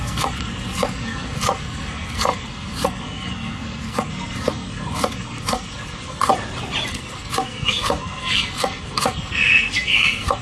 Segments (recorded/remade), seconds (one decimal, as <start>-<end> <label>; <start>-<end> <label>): 0.0-6.3 remade; 6.3-6.9 recorded; 6.9-10.4 remade